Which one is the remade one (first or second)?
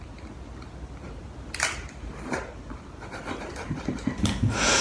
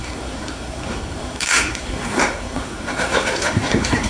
second